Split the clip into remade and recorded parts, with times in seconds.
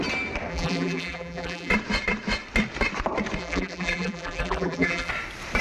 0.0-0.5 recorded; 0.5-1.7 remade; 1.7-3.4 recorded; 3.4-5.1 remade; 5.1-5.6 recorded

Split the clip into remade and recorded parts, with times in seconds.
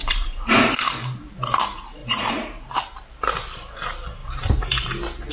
0.0-1.6 remade; 1.6-2.0 recorded; 2.0-2.8 remade; 2.8-4.2 recorded; 4.2-4.7 remade; 4.7-5.3 recorded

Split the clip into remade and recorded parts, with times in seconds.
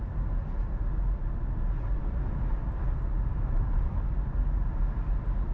0.0-2.0 recorded; 2.0-4.4 remade; 4.4-5.5 recorded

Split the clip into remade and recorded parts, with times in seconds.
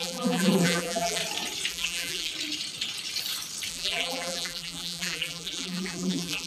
0.0-1.2 remade; 1.2-1.7 recorded; 1.7-2.3 remade; 2.3-3.7 recorded; 3.7-6.5 remade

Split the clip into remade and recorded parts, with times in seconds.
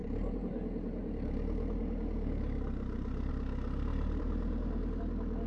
0.0-3.3 remade; 3.3-3.9 recorded; 3.9-5.0 remade; 5.0-5.5 recorded